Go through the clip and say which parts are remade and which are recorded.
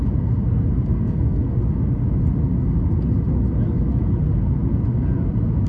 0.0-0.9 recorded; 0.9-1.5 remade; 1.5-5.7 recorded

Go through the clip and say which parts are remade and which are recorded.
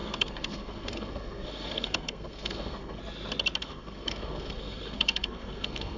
0.0-3.0 remade; 3.0-3.6 recorded; 3.6-6.0 remade